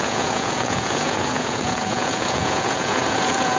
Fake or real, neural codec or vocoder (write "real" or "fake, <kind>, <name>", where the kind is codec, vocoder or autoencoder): fake, vocoder, Vocos